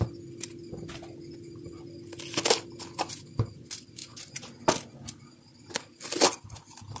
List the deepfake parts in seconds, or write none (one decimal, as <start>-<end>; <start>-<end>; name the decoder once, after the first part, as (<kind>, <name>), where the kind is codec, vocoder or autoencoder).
none